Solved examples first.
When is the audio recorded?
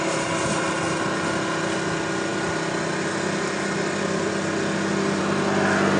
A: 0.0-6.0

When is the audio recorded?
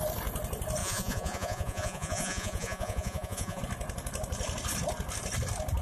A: 0.0-0.8; 3.6-5.8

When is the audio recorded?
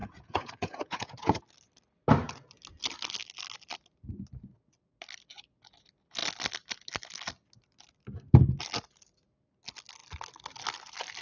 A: 1.4-11.2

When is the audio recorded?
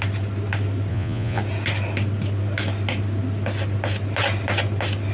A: 0.0-0.9; 1.4-5.1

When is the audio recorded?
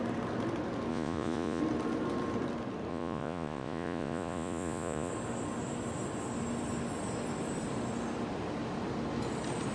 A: 0.0-0.9; 1.6-2.9; 5.1-9.7